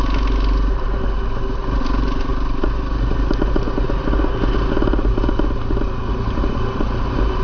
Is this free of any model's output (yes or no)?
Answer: yes